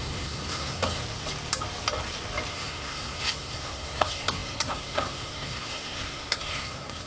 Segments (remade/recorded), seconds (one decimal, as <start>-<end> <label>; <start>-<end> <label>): 0.0-1.0 remade; 1.0-2.5 recorded; 2.5-7.1 remade

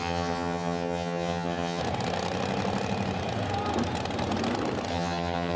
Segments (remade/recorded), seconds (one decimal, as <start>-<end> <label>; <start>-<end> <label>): 0.0-1.8 remade; 1.8-4.9 recorded; 4.9-5.6 remade

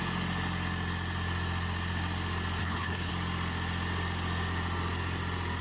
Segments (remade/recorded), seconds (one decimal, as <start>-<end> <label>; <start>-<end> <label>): 0.0-2.6 recorded; 2.6-3.1 remade; 3.1-5.6 recorded

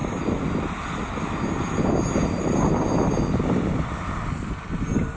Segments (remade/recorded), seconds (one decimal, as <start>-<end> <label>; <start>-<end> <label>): 0.0-5.2 recorded

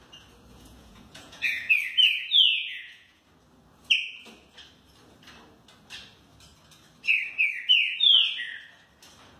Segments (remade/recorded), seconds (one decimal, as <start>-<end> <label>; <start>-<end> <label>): 0.0-0.5 recorded; 0.5-1.7 remade; 1.7-2.5 recorded; 2.5-3.2 remade; 3.2-9.4 recorded

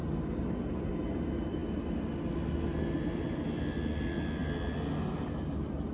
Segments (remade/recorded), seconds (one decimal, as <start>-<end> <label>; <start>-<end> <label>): 0.0-5.9 recorded

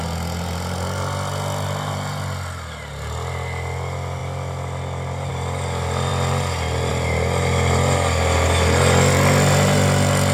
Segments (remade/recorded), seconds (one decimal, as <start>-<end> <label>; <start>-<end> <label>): 0.0-10.3 recorded

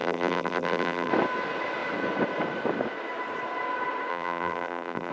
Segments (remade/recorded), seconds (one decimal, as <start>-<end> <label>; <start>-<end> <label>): 0.0-1.1 remade; 1.1-4.1 recorded; 4.1-5.1 remade